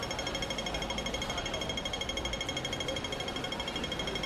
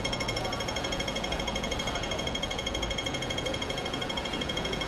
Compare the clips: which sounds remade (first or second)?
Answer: second